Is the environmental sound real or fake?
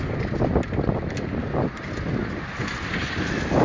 real